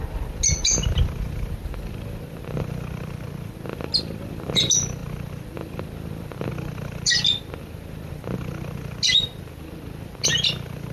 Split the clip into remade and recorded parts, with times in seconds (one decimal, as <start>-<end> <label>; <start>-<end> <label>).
0.0-10.9 recorded